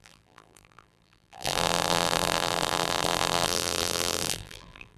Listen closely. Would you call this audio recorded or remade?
remade